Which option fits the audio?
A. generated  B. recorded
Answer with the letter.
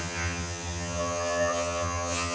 A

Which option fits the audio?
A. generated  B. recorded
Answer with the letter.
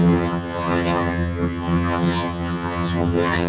A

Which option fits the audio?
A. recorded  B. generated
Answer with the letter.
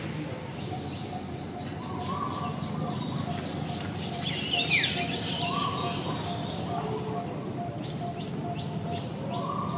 A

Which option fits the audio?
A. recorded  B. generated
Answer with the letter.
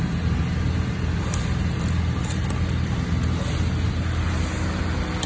A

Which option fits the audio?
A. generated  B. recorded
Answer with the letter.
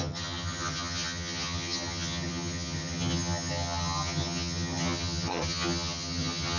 A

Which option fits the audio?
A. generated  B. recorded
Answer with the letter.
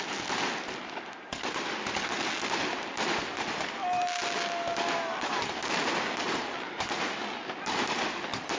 B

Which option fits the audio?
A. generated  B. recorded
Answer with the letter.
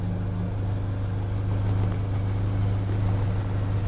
B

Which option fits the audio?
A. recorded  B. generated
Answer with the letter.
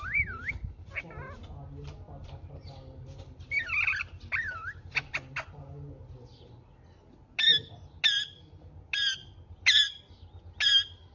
A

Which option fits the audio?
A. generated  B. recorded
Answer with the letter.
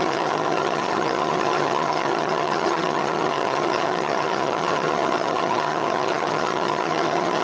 A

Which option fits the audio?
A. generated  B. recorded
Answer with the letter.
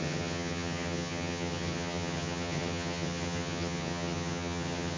A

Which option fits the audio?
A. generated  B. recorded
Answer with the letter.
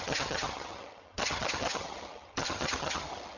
A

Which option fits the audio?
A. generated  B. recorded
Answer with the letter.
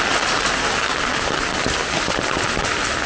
B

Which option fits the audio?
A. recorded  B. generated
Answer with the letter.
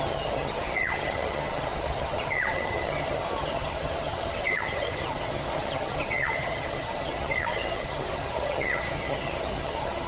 B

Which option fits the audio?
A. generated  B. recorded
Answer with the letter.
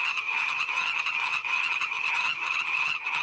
A